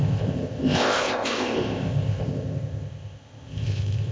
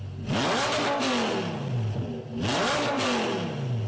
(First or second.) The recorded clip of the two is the second